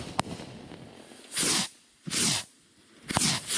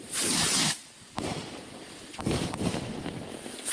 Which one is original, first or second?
first